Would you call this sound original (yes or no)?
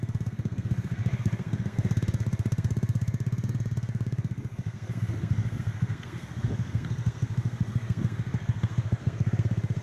no